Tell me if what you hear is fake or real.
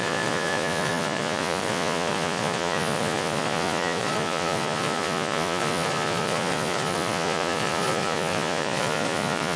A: fake